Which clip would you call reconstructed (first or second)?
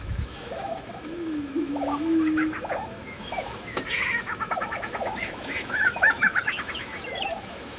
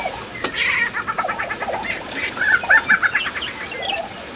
first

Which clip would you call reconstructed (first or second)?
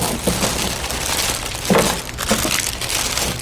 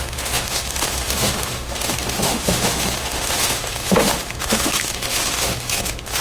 second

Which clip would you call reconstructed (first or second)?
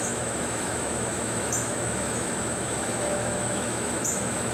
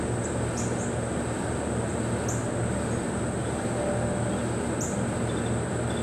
first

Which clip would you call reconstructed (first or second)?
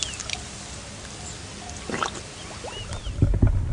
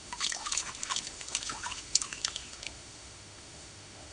second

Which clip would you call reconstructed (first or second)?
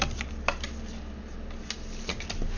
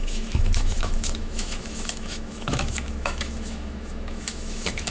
second